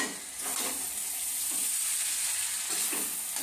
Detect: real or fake real